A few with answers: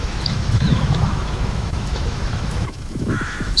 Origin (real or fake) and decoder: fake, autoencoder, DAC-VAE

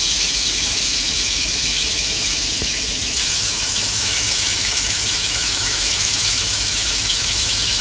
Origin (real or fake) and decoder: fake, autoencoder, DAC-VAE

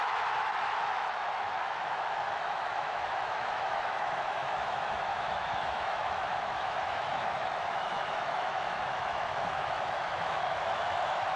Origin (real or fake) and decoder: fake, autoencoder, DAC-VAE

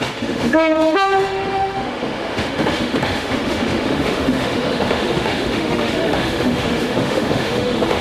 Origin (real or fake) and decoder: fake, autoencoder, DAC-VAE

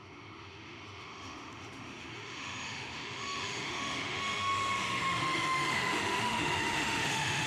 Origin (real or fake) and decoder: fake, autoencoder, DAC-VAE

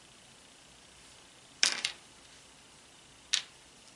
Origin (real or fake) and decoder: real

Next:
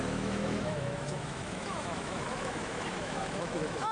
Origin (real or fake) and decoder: fake, autoencoder, DAC-VAE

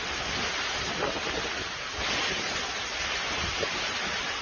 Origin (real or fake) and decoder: real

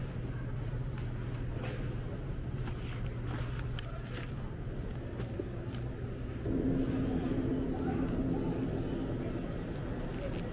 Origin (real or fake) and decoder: real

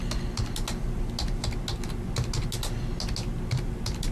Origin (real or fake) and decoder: real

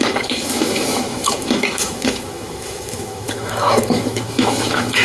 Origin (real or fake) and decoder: fake, autoencoder, DAC-VAE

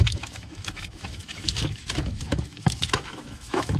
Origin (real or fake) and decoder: fake, autoencoder, DAC-VAE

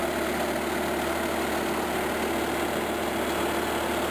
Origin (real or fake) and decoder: real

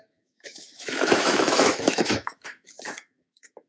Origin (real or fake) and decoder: fake, autoencoder, DAC-VAE